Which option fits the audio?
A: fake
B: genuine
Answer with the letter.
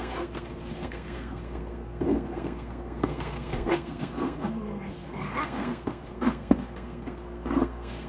A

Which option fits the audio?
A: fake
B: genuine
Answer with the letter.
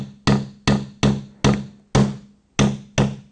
B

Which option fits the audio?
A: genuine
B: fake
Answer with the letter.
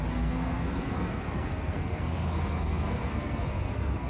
B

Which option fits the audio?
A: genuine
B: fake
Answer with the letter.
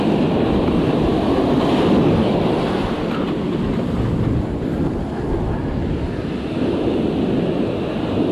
A